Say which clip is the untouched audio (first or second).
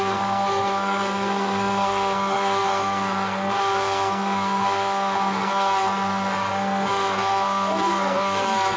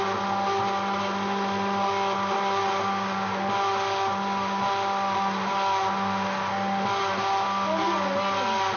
second